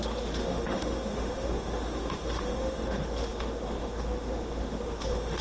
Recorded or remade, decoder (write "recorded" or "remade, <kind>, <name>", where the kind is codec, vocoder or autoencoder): remade, autoencoder, DAC-VAE